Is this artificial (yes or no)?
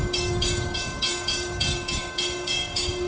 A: yes